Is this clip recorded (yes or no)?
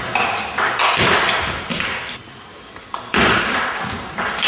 yes